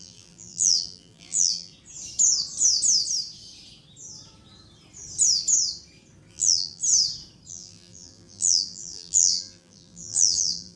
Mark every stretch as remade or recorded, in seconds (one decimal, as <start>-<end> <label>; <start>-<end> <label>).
0.0-1.7 remade; 1.7-6.3 recorded; 6.3-6.8 remade; 6.8-7.5 recorded; 7.5-10.8 remade